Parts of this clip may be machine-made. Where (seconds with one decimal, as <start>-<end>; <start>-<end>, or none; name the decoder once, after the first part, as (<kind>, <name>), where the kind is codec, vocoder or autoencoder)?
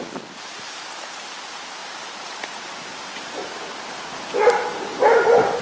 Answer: none